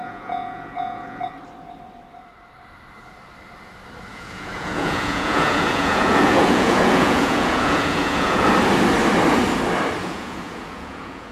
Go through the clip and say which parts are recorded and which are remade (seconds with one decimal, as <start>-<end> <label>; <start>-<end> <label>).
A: 0.0-1.2 remade; 1.2-4.1 recorded; 4.1-8.5 remade; 8.5-10.0 recorded; 10.0-11.3 remade